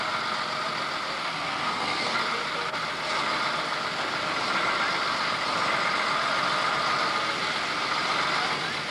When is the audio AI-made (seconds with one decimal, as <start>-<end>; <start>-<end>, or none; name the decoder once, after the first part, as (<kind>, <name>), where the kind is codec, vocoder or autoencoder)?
1.2-2.1 (codec, SNAC)